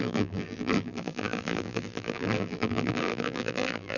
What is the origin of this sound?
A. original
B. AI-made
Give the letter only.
B